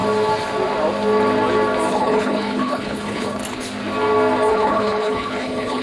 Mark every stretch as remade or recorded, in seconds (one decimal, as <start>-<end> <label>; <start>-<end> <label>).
0.0-1.9 recorded; 1.9-3.4 remade; 3.4-4.5 recorded; 4.5-5.8 remade

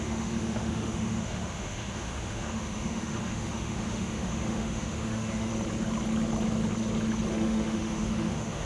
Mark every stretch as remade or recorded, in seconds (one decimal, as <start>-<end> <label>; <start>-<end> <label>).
0.0-5.5 remade; 5.5-7.3 recorded; 7.3-8.7 remade

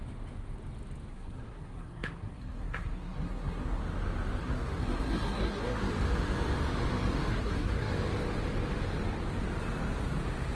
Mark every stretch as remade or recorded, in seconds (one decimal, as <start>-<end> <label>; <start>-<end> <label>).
0.0-1.1 recorded; 1.1-3.8 remade; 3.8-4.4 recorded; 4.4-5.9 remade; 5.9-7.3 recorded; 7.3-7.9 remade; 7.9-10.5 recorded

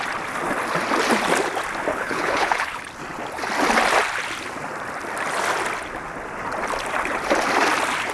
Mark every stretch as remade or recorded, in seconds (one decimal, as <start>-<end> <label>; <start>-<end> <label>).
0.0-1.9 recorded; 1.9-2.8 remade; 2.8-8.1 recorded

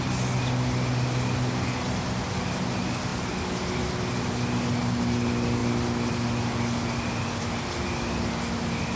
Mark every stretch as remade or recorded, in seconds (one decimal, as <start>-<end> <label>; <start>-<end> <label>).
0.0-3.1 recorded; 3.1-3.9 remade; 3.9-5.6 recorded; 5.6-6.1 remade; 6.1-9.0 recorded

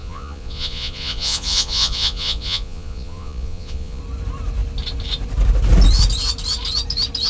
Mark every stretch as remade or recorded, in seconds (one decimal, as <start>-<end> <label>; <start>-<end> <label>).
0.0-4.0 remade; 4.0-7.3 recorded

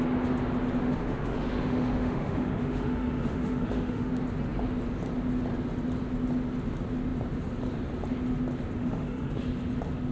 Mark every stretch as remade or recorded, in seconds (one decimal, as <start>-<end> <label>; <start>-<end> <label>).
0.0-0.8 recorded; 0.8-4.1 remade; 4.1-8.8 recorded; 8.8-9.4 remade; 9.4-10.1 recorded

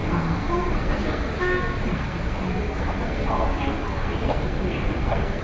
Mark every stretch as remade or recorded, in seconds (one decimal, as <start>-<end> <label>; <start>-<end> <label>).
0.0-1.3 remade; 1.3-1.9 recorded; 1.9-5.4 remade